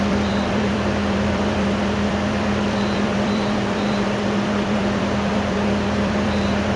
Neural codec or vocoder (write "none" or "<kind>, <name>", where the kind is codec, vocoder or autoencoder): vocoder, BigVGAN v2